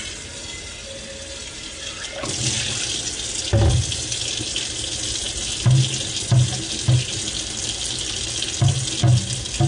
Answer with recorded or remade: recorded